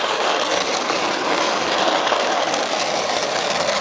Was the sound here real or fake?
fake